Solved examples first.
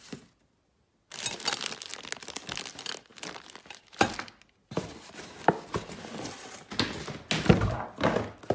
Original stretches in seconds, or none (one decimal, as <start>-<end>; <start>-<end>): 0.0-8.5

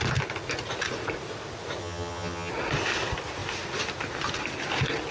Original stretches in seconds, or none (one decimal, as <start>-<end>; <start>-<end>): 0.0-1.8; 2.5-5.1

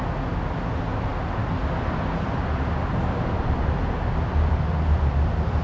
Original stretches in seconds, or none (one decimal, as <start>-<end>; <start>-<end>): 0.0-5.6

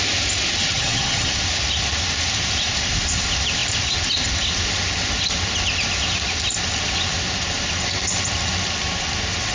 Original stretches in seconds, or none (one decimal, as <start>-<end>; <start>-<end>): 0.0-0.6; 1.3-9.5